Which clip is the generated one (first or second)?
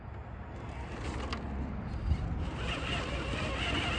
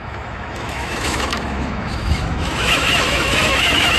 second